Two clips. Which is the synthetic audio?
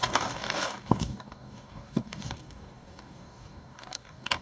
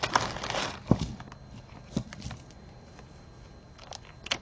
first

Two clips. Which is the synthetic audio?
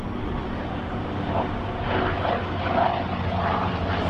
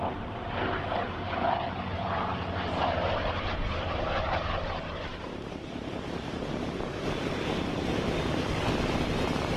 second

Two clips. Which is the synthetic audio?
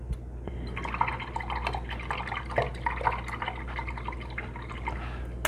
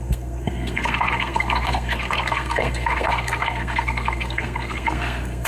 second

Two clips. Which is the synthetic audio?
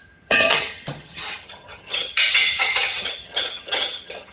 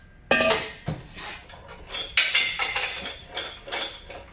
first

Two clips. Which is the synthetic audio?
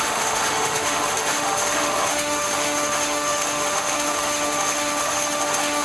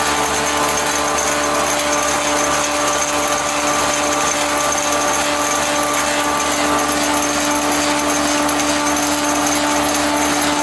first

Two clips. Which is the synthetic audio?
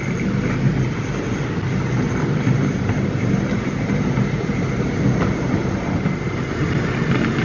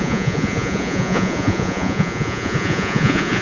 second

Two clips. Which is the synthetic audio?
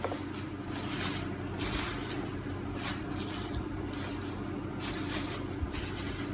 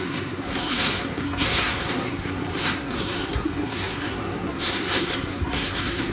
second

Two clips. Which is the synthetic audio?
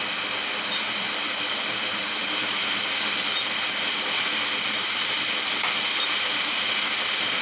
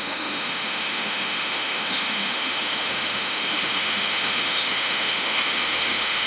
second